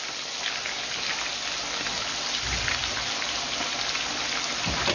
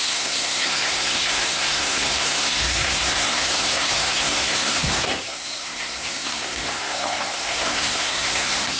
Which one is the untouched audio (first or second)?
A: first